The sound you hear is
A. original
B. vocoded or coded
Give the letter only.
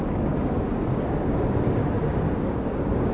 B